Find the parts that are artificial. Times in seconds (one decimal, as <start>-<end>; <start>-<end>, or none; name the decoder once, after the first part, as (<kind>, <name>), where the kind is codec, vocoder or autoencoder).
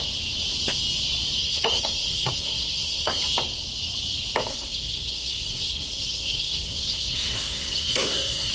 1.4-3.2 (codec, SNAC); 4.5-8.5